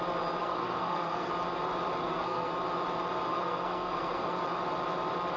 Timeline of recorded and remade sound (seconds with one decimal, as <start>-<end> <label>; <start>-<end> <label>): 0.0-0.4 recorded; 0.4-1.3 remade; 1.3-2.0 recorded; 2.0-2.5 remade; 2.5-3.3 recorded; 3.3-4.4 remade; 4.4-5.4 recorded